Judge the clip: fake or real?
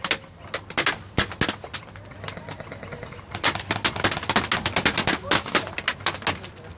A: real